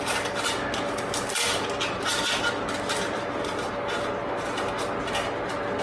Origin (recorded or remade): recorded